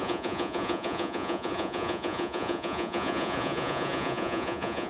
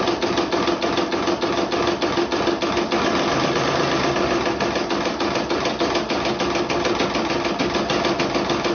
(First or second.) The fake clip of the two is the first